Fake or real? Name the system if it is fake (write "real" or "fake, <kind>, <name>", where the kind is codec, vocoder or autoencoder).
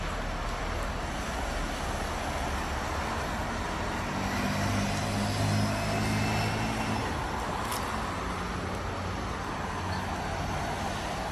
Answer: real